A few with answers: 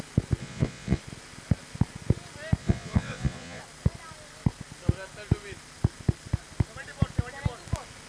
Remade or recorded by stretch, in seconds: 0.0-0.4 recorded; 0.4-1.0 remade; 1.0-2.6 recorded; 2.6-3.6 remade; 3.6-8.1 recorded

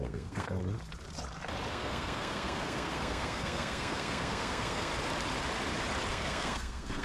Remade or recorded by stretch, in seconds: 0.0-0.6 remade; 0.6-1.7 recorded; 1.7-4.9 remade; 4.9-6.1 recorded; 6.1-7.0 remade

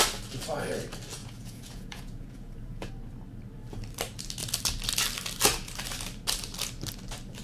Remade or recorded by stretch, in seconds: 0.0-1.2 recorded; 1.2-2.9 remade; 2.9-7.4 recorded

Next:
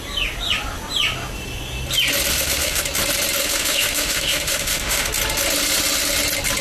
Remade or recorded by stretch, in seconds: 0.0-2.3 recorded; 2.3-2.8 remade; 2.8-3.4 recorded; 3.4-5.1 remade; 5.1-6.6 recorded

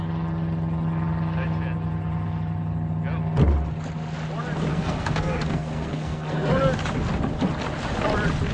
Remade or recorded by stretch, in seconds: 0.0-4.7 recorded; 4.7-6.5 remade; 6.5-8.5 recorded